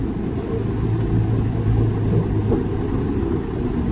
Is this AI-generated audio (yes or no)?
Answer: no